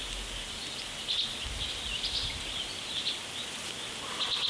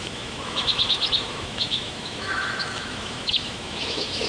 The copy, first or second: second